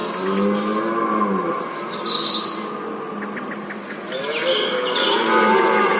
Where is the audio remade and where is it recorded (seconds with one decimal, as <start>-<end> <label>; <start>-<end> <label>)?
0.0-6.0 recorded